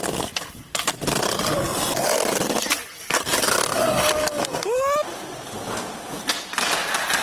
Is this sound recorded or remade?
recorded